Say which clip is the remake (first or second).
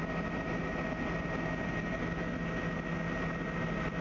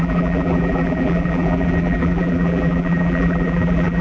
second